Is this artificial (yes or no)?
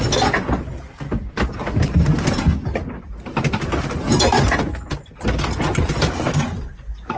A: no